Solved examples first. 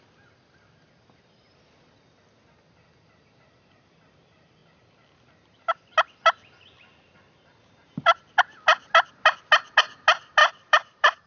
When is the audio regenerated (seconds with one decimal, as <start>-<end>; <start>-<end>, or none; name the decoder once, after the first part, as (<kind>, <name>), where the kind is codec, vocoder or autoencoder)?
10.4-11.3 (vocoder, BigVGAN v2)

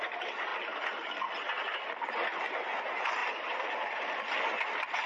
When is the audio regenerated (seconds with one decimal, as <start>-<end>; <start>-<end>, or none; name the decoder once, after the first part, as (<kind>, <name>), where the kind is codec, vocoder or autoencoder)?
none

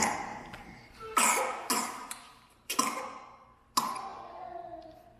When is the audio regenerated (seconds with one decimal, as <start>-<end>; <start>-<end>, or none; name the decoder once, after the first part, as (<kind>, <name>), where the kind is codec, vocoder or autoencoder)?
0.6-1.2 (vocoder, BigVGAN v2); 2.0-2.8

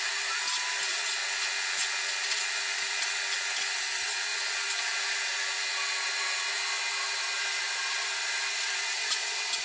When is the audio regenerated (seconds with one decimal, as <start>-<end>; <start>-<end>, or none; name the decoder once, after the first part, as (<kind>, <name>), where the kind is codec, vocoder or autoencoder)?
0.0-1.2 (vocoder, BigVGAN v2); 2.0-4.3; 7.2-9.6